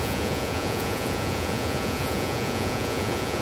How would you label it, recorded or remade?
remade